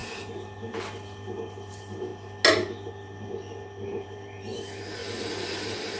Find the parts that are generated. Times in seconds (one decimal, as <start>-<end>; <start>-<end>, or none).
1.7-2.1; 3.8-5.0; 5.5-6.0